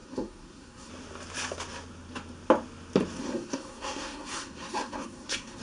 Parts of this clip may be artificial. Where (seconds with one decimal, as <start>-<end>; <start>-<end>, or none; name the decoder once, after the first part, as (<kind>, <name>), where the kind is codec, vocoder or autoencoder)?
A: 0.0-0.9 (codec, SNAC); 3.2-5.6